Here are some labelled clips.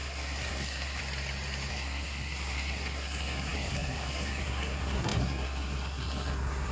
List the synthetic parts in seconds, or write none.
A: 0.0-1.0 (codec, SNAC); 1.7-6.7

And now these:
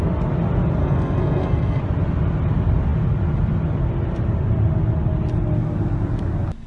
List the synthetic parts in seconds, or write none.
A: 0.8-1.8 (codec, SNAC)

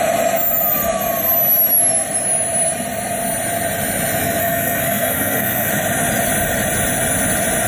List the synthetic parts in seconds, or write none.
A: 4.4-5.7 (codec, SNAC)

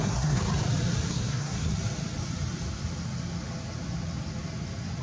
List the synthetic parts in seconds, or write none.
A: 0.0-0.4 (codec, SNAC); 1.1-1.7

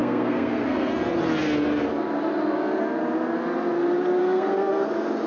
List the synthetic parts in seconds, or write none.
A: 0.0-0.9 (codec, SNAC); 4.2-4.8

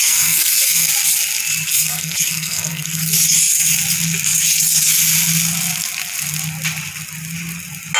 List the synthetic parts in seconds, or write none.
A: 0.0-0.9 (codec, SNAC); 1.7-3.0